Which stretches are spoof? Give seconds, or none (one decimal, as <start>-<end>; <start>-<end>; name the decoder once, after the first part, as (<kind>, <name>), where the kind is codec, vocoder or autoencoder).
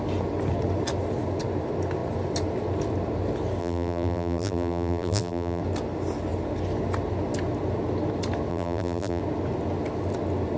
3.6-5.6 (vocoder, BigVGAN v2); 8.5-9.2